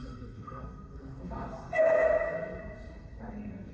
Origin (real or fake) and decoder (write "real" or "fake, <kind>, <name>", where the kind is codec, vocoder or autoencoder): fake, codec, SNAC